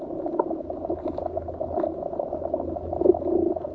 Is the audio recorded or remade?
recorded